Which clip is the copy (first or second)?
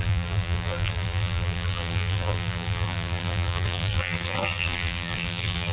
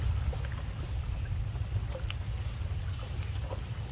first